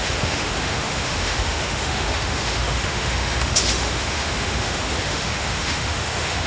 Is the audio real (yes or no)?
no